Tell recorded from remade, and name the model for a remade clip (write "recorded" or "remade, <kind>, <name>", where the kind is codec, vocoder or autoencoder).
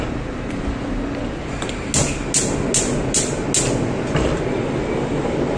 recorded